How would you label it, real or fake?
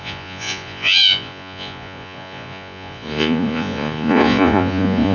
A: fake